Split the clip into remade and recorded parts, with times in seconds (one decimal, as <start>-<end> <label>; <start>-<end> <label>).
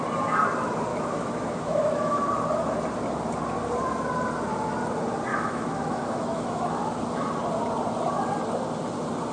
0.0-0.9 recorded; 0.9-2.2 remade; 2.2-5.3 recorded; 5.3-6.9 remade; 6.9-9.3 recorded